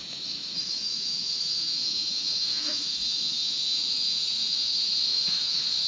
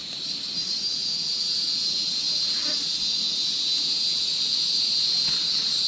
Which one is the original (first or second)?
second